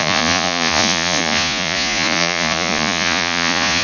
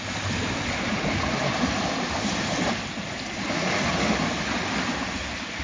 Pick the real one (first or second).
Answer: second